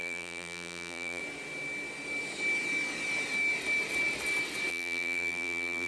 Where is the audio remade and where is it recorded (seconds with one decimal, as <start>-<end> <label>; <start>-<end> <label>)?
0.0-1.2 remade; 1.2-4.7 recorded; 4.7-5.9 remade

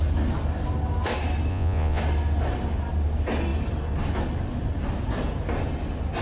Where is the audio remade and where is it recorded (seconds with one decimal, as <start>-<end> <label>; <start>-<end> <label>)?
0.0-1.5 recorded; 1.5-2.0 remade; 2.0-6.2 recorded